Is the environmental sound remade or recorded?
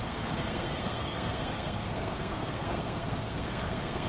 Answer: remade